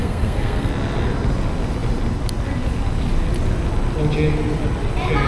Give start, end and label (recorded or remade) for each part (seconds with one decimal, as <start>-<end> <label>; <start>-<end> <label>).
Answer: 0.0-0.7 remade; 0.7-5.3 recorded